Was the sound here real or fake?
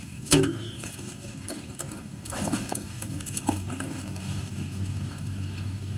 fake